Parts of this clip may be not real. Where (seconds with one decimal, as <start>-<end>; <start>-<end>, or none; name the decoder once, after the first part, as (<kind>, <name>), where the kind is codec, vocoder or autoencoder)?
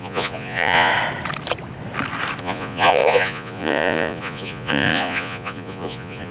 0.0-0.9 (vocoder, Vocos); 2.4-6.3